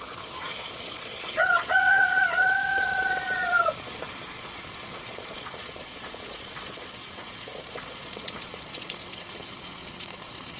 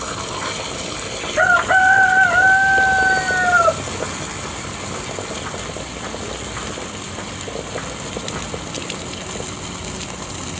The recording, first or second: second